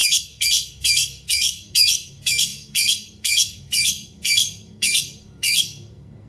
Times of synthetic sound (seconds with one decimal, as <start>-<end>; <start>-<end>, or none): 0.0-6.3